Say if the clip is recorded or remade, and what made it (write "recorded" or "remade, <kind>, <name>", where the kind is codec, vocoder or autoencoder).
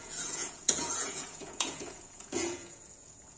remade, vocoder, Vocos